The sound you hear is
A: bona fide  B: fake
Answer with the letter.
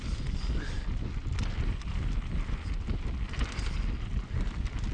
A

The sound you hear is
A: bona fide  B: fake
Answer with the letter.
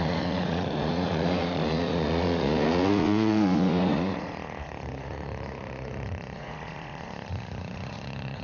B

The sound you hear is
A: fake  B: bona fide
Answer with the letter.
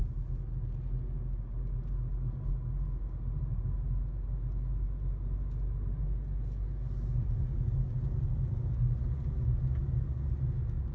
B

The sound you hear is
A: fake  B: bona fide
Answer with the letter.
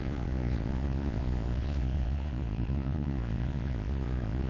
A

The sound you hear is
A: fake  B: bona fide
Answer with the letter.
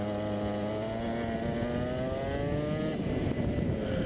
B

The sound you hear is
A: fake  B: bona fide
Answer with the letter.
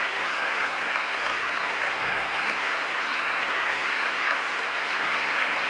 A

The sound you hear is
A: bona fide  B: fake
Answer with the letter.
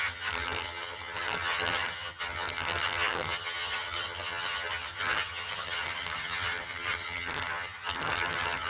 B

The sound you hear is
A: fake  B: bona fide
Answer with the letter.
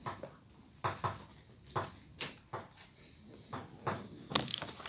B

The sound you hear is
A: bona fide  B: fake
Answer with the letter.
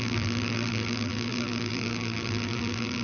B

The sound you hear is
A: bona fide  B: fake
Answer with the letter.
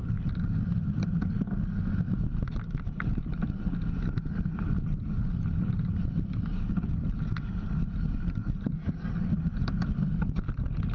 A